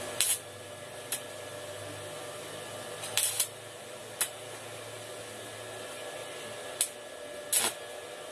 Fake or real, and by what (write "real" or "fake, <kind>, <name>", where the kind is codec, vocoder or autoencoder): real